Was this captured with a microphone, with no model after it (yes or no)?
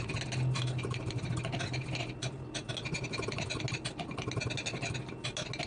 yes